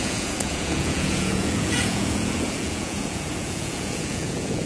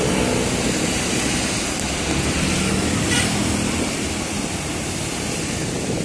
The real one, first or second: second